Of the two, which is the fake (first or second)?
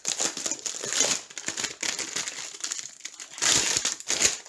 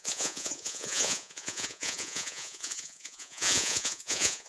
second